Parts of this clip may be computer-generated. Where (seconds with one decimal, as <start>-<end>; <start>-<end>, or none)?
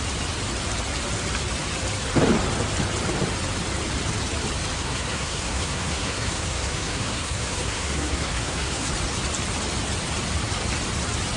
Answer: 4.8-8.9